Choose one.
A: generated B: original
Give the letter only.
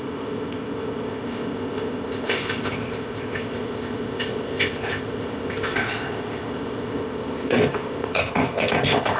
A